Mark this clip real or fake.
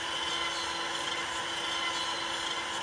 real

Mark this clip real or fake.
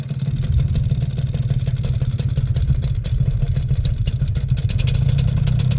real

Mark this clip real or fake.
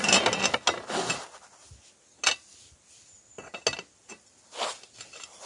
real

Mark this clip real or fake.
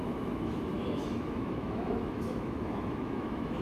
fake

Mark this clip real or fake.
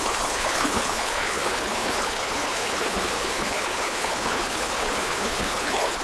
fake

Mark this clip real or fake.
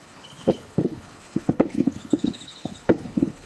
fake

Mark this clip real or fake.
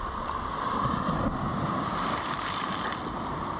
real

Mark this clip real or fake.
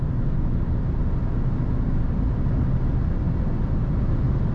real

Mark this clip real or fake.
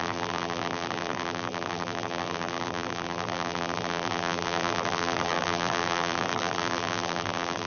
fake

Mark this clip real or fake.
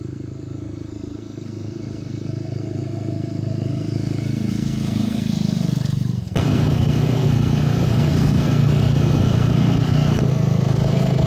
fake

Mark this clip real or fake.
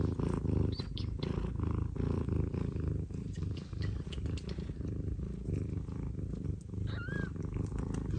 real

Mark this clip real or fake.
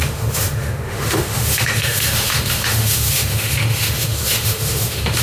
fake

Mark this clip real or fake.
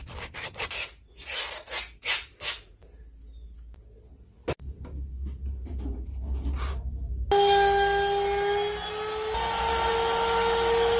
real